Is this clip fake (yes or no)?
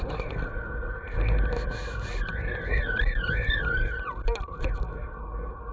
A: no